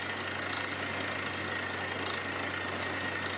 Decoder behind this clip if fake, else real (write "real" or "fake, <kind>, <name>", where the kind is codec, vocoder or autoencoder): real